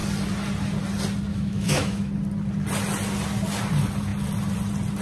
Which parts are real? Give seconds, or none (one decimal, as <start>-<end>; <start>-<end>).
0.0-1.3; 2.1-5.0